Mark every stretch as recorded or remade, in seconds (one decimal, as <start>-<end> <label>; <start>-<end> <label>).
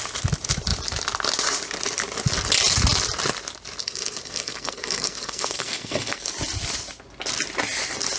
0.0-3.8 recorded; 3.8-6.3 remade; 6.3-8.2 recorded